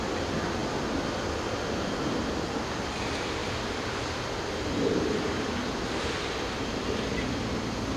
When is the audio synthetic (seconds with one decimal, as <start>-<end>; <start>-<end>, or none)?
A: 3.4-5.6